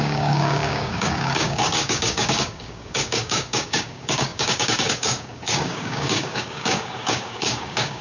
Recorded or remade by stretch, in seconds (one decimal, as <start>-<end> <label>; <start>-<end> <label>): 0.0-8.0 remade